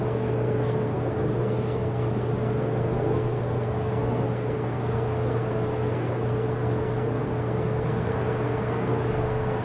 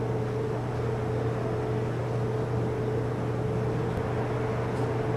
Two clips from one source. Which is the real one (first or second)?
second